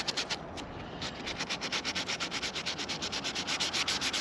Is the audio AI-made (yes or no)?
no